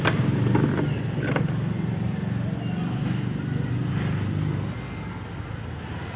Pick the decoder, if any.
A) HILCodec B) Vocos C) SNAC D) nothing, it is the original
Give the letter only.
D